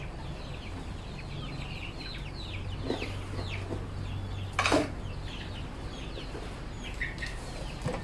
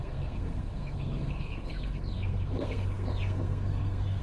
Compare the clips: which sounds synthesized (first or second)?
second